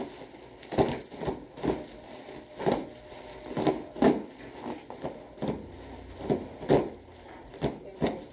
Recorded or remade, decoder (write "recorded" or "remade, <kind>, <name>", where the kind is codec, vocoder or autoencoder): recorded